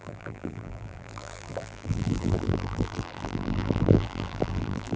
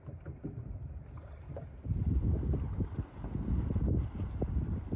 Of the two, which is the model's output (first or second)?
first